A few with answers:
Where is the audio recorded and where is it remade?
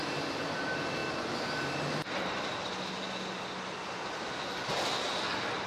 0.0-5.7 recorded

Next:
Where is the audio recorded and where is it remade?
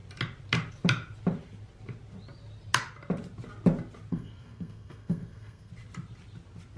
0.0-4.1 recorded; 4.1-5.7 remade; 5.7-6.8 recorded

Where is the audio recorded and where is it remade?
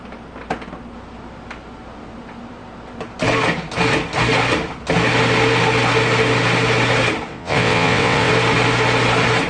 0.0-7.3 recorded; 7.3-8.3 remade; 8.3-9.5 recorded